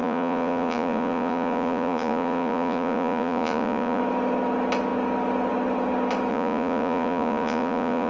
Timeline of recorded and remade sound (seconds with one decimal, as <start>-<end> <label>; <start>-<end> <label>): 0.0-4.0 remade; 4.0-6.3 recorded; 6.3-8.1 remade